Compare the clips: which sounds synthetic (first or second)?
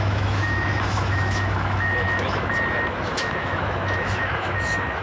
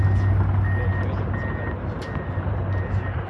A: first